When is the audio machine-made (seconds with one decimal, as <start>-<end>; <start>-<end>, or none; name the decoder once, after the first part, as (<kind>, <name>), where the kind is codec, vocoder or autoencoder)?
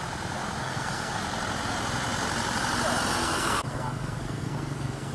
0.6-1.2 (codec, SNAC); 3.2-5.1